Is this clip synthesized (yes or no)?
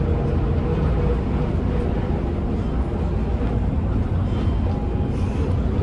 no